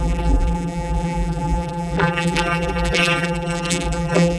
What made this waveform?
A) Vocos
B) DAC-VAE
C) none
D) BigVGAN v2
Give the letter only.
D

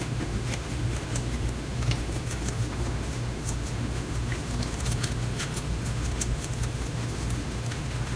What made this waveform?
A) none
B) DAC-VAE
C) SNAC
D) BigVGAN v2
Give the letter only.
B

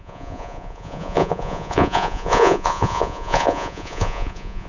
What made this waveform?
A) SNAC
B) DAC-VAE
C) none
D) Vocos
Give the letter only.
D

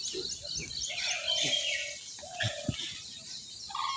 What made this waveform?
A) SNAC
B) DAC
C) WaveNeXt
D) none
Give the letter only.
D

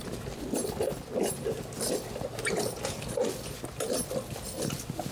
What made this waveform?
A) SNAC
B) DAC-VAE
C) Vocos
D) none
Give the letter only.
D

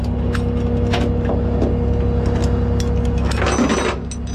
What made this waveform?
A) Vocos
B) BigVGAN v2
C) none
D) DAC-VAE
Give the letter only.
C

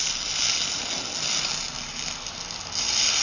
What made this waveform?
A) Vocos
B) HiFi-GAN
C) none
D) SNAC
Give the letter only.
C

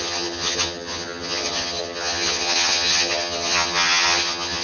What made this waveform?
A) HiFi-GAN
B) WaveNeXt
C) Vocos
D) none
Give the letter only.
A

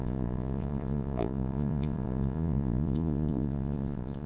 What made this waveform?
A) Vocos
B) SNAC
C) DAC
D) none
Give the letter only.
A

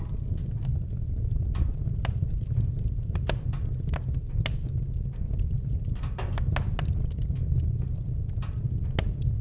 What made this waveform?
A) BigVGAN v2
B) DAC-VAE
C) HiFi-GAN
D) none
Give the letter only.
D